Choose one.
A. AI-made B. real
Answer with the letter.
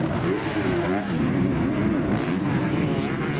A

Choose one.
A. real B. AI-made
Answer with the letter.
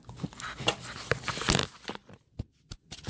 A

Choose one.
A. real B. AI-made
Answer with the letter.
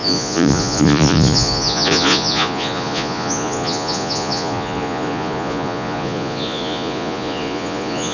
B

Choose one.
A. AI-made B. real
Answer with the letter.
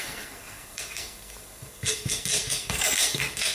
A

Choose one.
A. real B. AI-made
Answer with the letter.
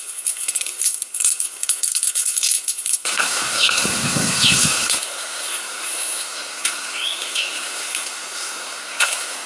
B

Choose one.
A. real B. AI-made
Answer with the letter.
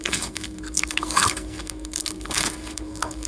B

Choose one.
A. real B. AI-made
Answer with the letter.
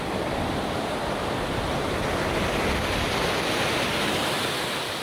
A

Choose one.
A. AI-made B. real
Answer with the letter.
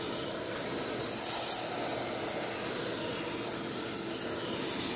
B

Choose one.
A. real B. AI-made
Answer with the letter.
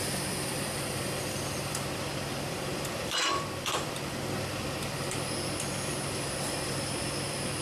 B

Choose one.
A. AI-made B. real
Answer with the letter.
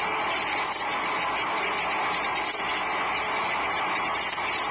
B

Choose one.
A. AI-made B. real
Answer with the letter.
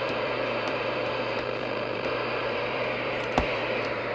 A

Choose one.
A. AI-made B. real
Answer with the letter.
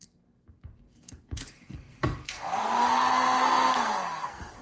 A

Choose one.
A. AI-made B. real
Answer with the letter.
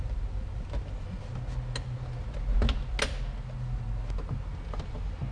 B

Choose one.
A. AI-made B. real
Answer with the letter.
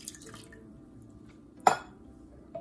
A